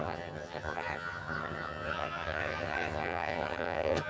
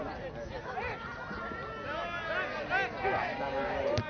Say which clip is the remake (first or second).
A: first